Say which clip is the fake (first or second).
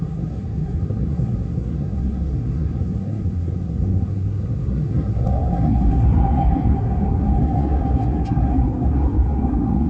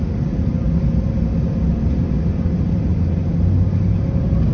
first